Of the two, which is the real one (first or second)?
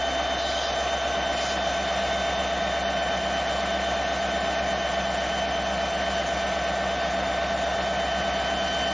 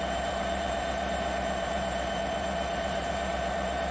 first